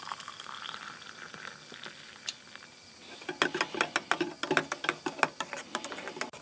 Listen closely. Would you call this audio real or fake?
real